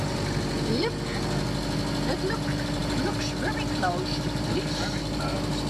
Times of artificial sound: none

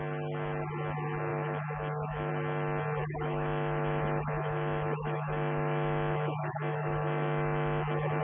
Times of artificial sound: 1.3-2.3 (autoencoder, DAC-VAE); 3.0-8.2

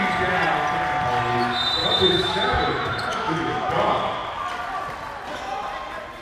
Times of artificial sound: 1.8-3.7 (autoencoder, DAC-VAE)

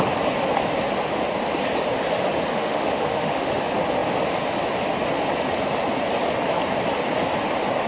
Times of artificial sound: 2.5-3.6 (autoencoder, DAC-VAE)